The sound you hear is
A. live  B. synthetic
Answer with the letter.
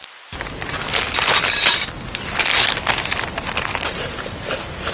A